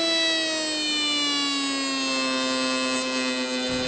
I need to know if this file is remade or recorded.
recorded